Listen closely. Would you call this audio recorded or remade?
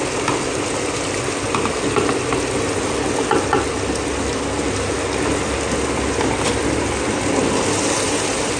recorded